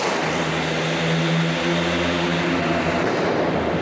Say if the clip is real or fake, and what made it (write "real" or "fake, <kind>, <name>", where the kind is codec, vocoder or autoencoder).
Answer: real